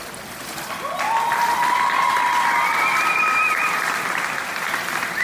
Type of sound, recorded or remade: recorded